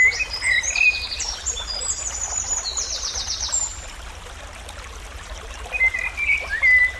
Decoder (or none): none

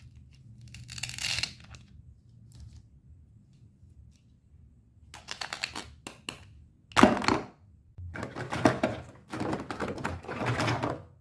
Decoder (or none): none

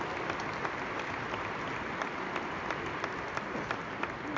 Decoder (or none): none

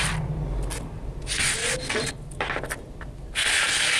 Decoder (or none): none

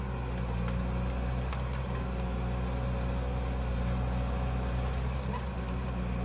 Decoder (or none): none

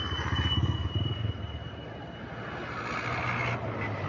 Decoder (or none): none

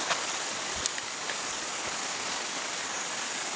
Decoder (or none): codec, DAC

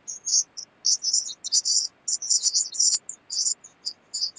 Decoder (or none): none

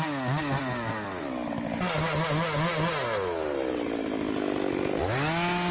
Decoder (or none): none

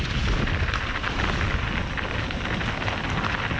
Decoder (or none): none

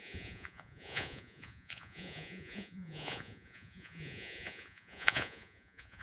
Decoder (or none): vocoder, Vocos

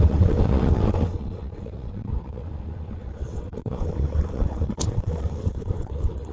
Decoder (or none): vocoder, WaveNeXt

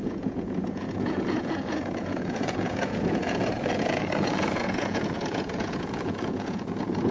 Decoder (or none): vocoder, Vocos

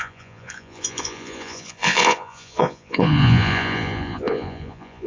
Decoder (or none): vocoder, Vocos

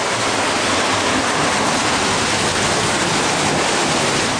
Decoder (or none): none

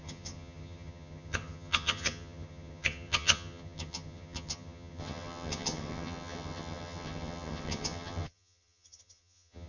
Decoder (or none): vocoder, HiFi-GAN